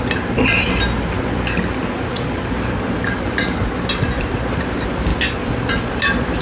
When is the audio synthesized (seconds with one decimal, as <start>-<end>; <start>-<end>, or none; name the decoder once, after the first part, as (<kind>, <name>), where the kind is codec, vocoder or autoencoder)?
none